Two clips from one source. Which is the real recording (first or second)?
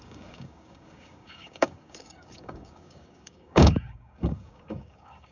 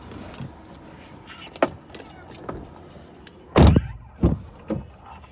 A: second